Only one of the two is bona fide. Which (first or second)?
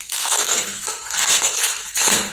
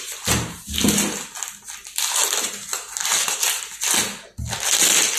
second